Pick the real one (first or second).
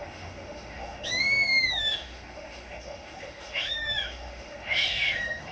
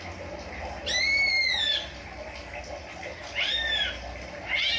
second